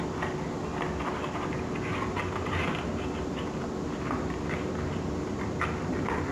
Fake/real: real